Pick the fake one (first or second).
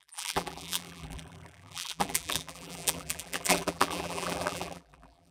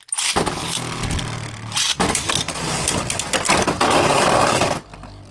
first